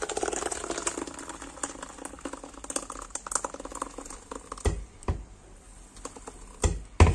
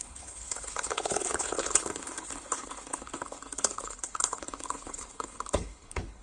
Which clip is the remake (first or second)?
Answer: second